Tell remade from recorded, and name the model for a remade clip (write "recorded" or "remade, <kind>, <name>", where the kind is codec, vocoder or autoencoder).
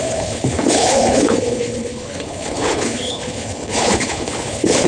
remade, codec, HILCodec